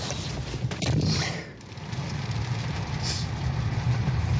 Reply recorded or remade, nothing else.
remade